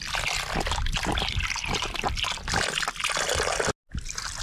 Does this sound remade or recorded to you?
recorded